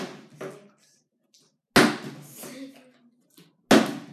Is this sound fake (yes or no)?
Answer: no